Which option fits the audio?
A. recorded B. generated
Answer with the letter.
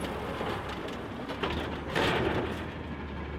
A